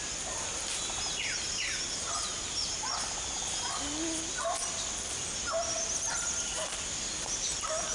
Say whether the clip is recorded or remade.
recorded